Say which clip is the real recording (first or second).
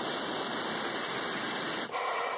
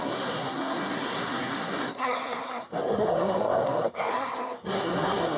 first